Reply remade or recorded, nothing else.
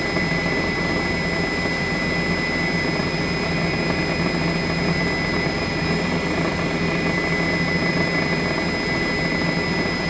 recorded